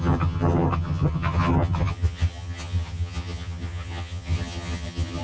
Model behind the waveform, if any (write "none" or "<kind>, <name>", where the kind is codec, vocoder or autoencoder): vocoder, HiFi-GAN